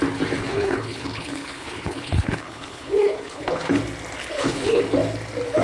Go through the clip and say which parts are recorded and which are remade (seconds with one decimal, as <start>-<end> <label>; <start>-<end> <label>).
0.0-0.4 recorded; 0.4-3.8 remade; 3.8-4.2 recorded; 4.2-4.8 remade; 4.8-5.6 recorded